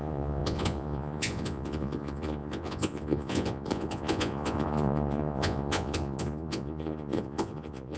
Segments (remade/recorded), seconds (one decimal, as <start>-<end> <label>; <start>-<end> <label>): 0.0-8.0 remade